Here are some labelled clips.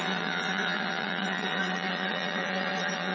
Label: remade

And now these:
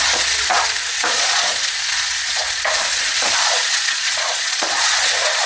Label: remade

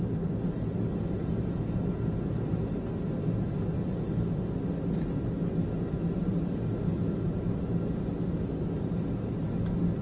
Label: recorded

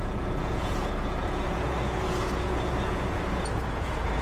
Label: remade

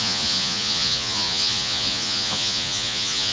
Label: remade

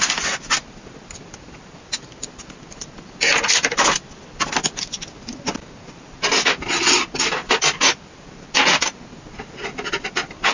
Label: recorded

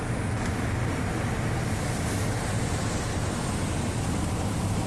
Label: recorded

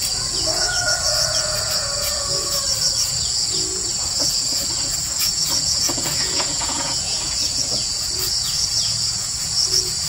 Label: remade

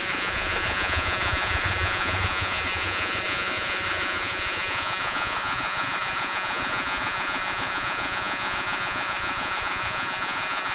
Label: remade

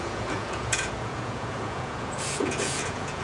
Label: remade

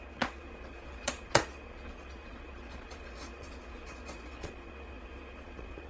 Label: remade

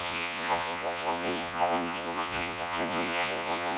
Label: remade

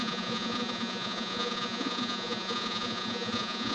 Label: remade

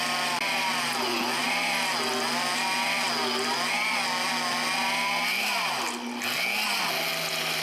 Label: recorded